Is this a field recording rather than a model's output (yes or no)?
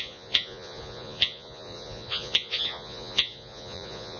no